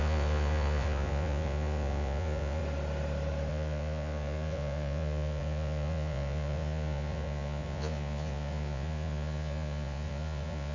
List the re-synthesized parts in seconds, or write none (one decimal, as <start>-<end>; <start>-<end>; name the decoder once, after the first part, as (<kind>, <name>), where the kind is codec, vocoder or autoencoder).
0.0-2.6 (vocoder, Vocos); 3.5-10.7

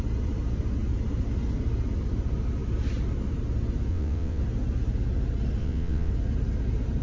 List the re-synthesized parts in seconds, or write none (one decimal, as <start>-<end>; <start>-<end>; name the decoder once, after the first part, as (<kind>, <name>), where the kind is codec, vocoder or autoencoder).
3.9-4.4 (vocoder, WaveNeXt); 5.6-6.1

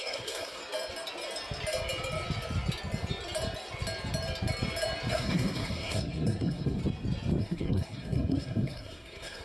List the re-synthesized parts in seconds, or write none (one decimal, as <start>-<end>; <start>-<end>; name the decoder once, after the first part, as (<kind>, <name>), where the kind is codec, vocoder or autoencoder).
0.0-0.6 (codec, SNAC); 5.1-6.8; 7.4-9.4

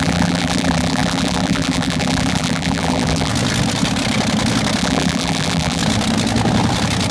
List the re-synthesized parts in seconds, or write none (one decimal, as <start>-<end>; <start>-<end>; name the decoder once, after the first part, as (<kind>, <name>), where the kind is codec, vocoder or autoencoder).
0.0-3.3 (vocoder, BigVGAN v2); 4.8-5.8

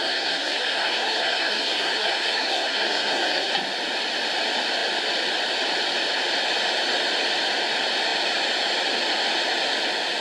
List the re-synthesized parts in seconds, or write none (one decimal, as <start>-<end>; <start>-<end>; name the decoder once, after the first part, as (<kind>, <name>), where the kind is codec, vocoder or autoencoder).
0.0-3.5 (codec, SNAC)

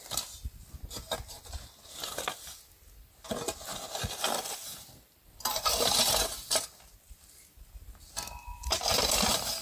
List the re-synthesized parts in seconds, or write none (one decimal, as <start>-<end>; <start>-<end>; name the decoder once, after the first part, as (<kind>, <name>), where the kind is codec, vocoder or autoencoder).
8.5-9.1 (vocoder, BigVGAN v2)

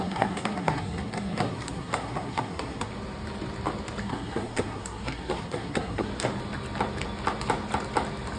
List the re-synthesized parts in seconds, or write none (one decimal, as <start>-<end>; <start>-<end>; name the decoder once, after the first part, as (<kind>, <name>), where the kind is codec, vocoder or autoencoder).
0.0-2.9 (codec, SNAC); 4.0-6.1